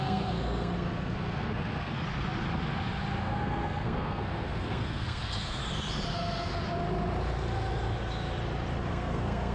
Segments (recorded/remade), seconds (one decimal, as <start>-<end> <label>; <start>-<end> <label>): 0.0-2.0 remade; 2.0-3.2 recorded; 3.2-5.6 remade; 5.6-6.1 recorded; 6.1-6.5 remade; 6.5-8.9 recorded; 8.9-9.5 remade